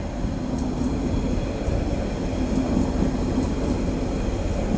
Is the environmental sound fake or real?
real